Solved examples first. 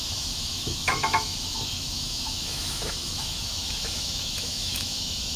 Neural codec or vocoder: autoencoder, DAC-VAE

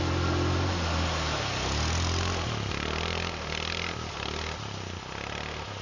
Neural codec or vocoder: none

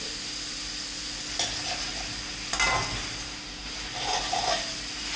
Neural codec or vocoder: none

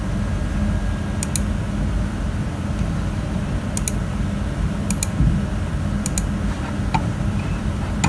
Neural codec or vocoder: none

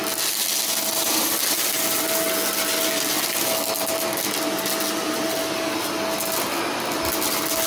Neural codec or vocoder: none